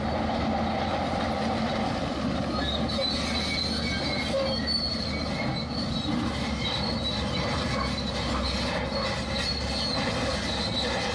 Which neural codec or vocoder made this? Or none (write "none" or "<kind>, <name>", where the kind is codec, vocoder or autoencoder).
none